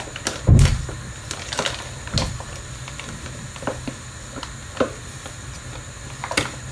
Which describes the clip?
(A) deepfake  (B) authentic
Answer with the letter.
B